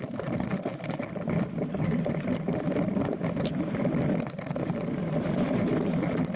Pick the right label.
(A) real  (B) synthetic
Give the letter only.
B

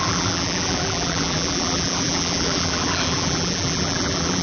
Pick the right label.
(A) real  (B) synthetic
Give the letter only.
B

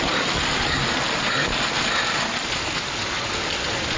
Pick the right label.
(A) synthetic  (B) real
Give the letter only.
B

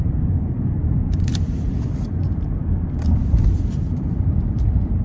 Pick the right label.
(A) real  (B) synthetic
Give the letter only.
B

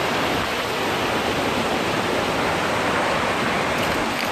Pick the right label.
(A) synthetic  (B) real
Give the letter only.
B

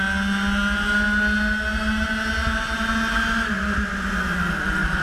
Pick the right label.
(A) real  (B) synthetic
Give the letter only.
A